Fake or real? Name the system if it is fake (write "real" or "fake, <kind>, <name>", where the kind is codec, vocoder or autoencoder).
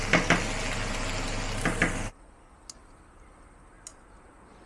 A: real